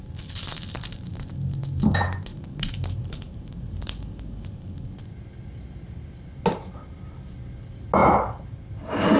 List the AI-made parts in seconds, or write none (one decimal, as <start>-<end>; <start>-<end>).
2.3-4.5